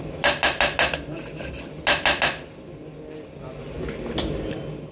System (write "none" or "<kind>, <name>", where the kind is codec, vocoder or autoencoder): none